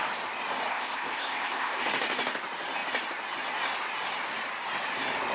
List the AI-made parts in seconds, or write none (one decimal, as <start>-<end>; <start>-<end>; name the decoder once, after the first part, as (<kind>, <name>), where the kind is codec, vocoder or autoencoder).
0.7-1.8 (codec, ZipCodec)